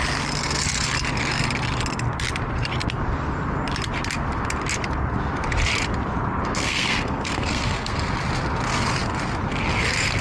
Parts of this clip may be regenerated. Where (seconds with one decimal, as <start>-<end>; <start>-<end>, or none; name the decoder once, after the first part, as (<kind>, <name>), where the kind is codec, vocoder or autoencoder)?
6.5-8.1 (codec, SNAC)